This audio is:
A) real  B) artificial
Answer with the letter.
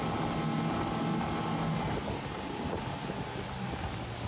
A